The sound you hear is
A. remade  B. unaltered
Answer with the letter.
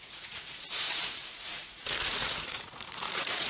A